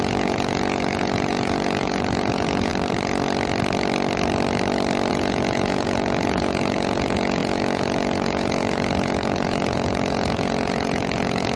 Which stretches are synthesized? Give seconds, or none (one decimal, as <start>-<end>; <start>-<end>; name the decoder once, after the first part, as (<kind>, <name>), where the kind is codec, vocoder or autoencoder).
0.0-2.7 (vocoder, Vocos); 5.1-11.6